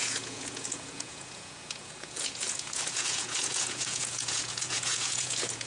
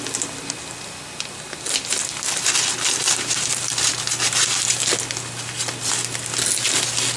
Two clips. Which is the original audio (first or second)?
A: second